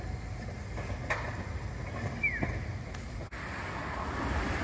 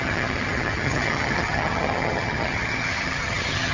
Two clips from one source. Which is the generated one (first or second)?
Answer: second